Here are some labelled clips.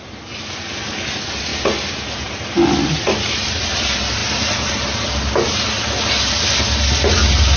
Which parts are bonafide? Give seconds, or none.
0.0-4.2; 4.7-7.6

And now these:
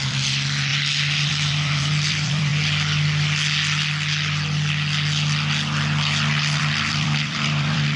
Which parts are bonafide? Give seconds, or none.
0.7-1.3; 2.5-6.6

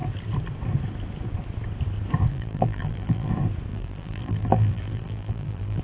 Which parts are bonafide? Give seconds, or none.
0.0-2.3; 3.3-3.7

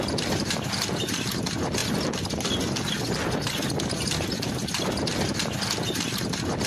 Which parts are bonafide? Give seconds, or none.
0.0-6.7

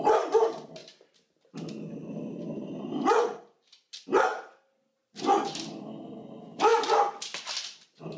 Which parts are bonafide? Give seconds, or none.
0.0-8.2

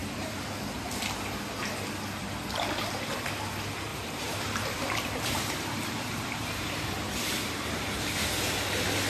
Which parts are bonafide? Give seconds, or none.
0.9-3.9; 7.7-9.1

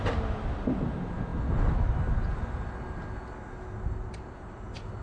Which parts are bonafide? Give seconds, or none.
0.0-5.0